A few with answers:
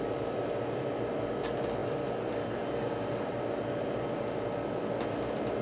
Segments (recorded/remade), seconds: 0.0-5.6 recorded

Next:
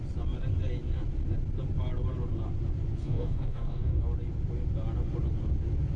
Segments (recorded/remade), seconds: 0.0-3.0 recorded; 3.0-4.0 remade; 4.0-6.0 recorded